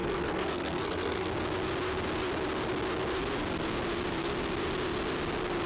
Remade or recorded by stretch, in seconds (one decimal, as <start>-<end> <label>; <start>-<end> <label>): 0.0-1.3 remade; 1.3-5.7 recorded